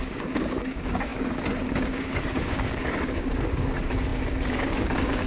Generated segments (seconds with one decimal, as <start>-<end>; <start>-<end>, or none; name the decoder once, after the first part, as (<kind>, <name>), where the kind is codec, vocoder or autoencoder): 0.0-5.3 (codec, DAC)